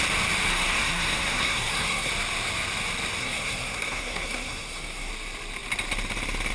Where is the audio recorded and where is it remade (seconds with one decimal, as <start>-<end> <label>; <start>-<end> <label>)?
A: 0.0-0.5 recorded; 0.5-2.1 remade; 2.1-3.2 recorded; 3.2-5.1 remade; 5.1-6.5 recorded